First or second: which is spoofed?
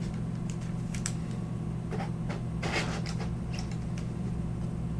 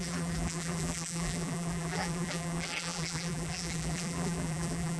second